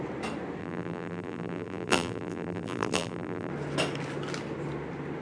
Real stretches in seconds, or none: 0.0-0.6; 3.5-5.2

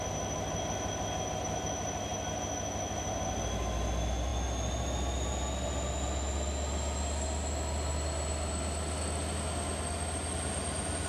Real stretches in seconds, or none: 0.0-11.1

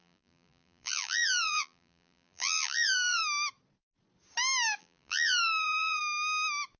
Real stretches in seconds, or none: 3.2-4.8; 6.0-6.8

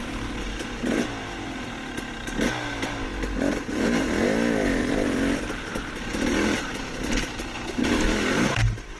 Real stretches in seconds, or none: 0.0-4.8; 7.3-9.0

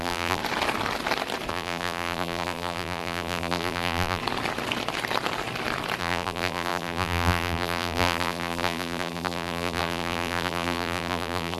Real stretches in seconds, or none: 0.4-1.5; 4.2-6.0

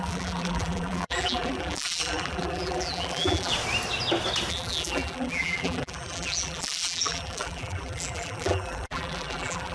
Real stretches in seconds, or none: 3.5-4.5

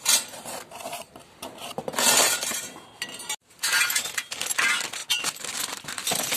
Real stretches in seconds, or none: 0.0-6.4

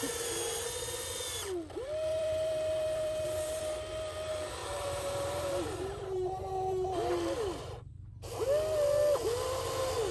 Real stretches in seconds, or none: 0.0-2.1; 3.6-4.6; 6.5-10.1